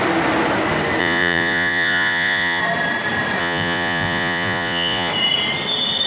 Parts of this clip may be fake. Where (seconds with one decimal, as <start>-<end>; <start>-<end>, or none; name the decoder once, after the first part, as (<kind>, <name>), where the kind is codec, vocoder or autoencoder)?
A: 1.0-2.6 (vocoder, Vocos); 3.4-5.1